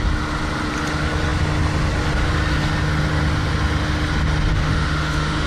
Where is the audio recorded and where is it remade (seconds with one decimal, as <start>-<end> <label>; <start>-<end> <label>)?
0.0-4.5 recorded; 4.5-5.5 remade